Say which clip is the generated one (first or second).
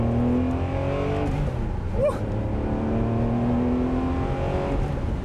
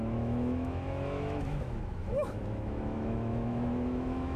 second